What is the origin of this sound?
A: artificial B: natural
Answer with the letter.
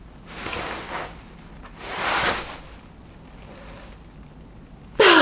B